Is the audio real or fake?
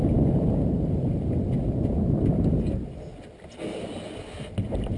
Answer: real